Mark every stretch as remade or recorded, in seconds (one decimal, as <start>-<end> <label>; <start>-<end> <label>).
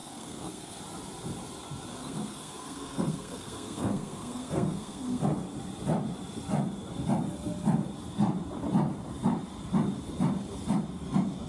0.0-0.8 remade; 0.8-1.9 recorded; 1.9-5.2 remade; 5.2-11.5 recorded